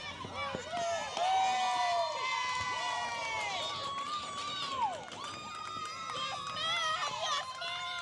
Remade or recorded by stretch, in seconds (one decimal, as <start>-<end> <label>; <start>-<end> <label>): 0.0-8.0 recorded